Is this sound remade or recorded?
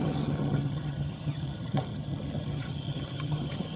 remade